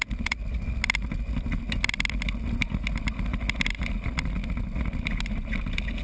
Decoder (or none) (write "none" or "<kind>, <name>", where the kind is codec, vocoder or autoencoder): none